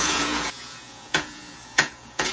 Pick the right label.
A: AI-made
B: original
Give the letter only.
A